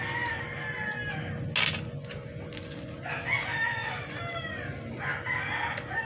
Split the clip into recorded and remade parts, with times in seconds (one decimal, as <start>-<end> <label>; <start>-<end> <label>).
0.0-6.0 recorded